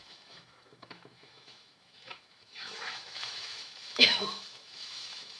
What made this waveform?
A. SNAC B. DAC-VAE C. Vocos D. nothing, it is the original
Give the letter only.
B